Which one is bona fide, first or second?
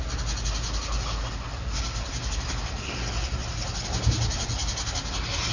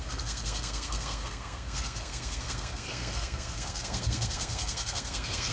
first